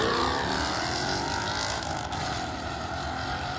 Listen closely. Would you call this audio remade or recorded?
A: remade